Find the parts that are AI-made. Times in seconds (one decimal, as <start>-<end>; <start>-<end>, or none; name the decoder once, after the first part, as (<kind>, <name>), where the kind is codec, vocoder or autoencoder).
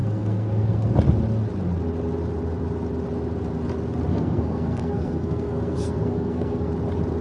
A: 0.0-0.9 (codec, SNAC); 4.1-6.7